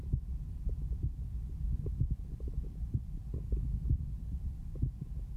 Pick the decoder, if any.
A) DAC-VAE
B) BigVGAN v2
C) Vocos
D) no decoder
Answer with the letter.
B